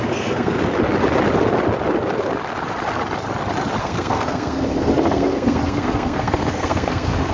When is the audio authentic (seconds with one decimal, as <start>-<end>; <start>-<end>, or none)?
0.6-3.8